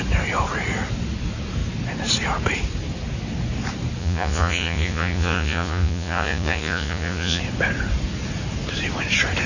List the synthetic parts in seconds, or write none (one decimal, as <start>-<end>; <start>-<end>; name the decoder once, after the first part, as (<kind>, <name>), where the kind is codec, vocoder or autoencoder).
4.0-7.4 (vocoder, Vocos)